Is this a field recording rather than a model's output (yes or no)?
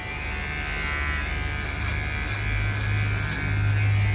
yes